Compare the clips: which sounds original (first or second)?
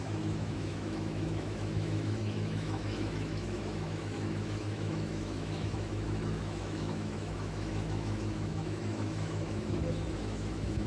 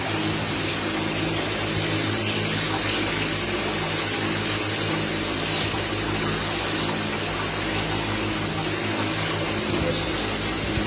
second